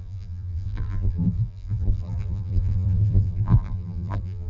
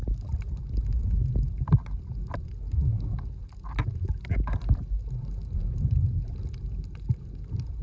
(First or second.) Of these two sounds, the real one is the second